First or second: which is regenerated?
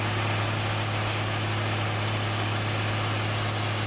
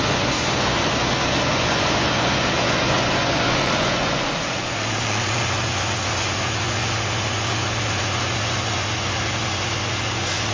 second